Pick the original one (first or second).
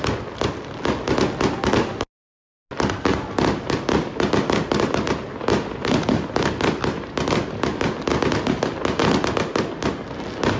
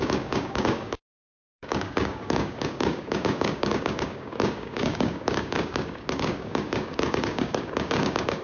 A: first